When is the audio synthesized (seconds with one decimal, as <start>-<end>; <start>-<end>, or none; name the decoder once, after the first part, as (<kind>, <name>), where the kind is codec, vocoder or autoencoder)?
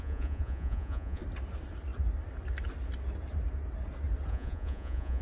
0.0-1.2 (vocoder, Vocos); 4.3-5.2